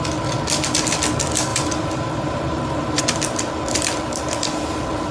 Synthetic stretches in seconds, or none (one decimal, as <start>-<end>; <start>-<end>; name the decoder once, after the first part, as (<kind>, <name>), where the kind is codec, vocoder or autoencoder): 1.5-3.0 (vocoder, BigVGAN v2)